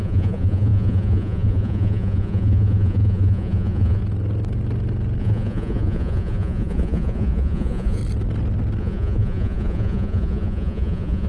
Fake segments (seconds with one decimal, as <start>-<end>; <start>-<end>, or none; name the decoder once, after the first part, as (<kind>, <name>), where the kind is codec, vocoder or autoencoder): 0.0-4.0 (vocoder, Vocos); 5.2-8.0; 8.8-11.3